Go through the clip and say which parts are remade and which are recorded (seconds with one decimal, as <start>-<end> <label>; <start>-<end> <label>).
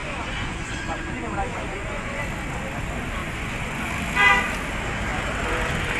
0.0-2.2 remade; 2.2-3.2 recorded; 3.2-3.9 remade; 3.9-6.0 recorded